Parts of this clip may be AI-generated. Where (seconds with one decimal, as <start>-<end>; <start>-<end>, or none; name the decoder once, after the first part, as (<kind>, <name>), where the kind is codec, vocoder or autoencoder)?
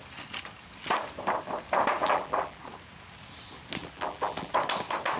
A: 2.0-2.6 (vocoder, BigVGAN v2); 3.8-4.5